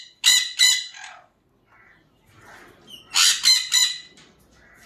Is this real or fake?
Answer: real